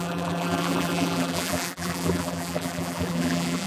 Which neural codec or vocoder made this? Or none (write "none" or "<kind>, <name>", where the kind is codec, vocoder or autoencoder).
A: vocoder, BigVGAN v2